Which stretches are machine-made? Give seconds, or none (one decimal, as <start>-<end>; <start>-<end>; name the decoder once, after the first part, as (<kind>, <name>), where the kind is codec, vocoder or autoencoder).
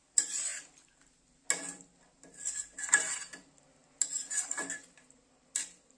none